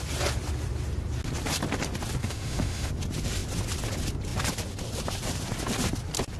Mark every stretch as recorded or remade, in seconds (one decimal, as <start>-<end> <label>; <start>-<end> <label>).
0.0-2.2 recorded; 2.2-2.9 remade; 2.9-6.4 recorded